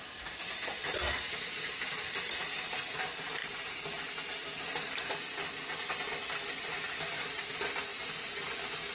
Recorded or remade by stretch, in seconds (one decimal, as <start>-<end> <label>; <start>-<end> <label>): 0.0-8.9 recorded